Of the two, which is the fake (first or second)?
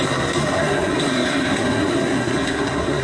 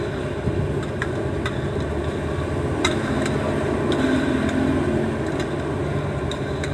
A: first